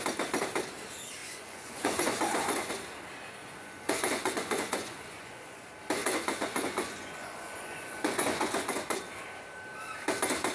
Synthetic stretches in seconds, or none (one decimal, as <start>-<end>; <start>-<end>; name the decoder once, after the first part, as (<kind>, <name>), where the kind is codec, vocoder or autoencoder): 1.2-2.7 (vocoder, Vocos); 3.4-5.6; 6.0-9.0